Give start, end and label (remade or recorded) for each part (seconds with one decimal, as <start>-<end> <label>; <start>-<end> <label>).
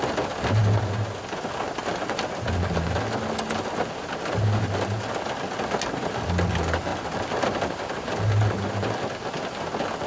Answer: 0.0-10.1 recorded